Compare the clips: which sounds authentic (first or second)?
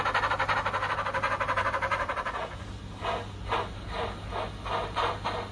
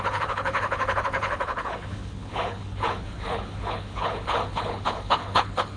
first